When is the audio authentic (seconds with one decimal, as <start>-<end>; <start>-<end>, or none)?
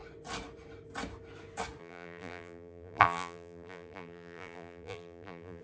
0.0-1.8